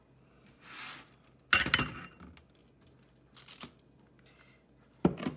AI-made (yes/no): no